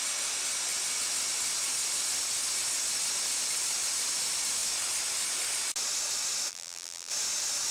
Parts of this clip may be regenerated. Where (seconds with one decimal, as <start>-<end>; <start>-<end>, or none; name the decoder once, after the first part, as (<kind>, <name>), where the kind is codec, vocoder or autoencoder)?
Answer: 6.5-7.1 (vocoder, BigVGAN v2)